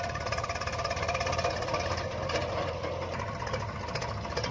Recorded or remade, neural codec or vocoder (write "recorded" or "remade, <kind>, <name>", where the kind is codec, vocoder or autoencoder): recorded